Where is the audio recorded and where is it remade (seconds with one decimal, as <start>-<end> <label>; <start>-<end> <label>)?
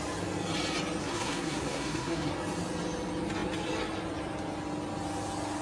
0.0-1.0 recorded; 1.0-2.3 remade; 2.3-5.6 recorded